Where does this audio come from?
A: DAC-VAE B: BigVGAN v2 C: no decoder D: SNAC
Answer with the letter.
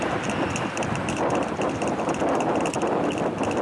C